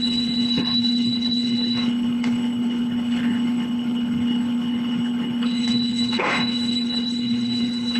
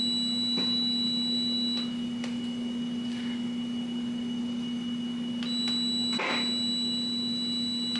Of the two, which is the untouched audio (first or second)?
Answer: second